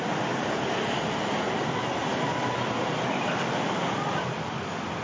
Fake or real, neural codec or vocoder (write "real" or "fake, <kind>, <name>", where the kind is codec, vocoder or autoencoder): real